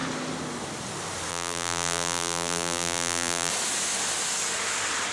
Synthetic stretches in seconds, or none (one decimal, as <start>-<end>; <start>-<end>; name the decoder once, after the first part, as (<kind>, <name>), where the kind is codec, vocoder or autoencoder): 1.3-3.5 (vocoder, BigVGAN v2)